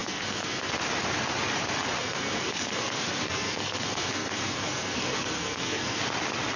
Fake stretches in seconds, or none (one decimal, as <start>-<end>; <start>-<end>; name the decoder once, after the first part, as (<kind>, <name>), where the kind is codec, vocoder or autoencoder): 0.0-0.7 (codec, SNAC); 2.0-6.0